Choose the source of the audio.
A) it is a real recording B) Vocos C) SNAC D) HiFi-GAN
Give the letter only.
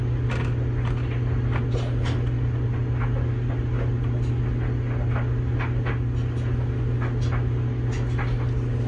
A